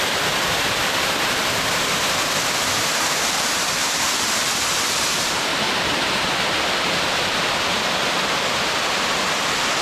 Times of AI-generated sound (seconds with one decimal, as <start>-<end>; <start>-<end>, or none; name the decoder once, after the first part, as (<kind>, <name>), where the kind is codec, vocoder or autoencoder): 0.0-3.8 (vocoder, BigVGAN v2); 4.4-5.5; 8.3-9.8